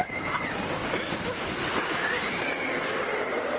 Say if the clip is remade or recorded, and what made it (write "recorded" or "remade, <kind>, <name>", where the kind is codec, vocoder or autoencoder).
recorded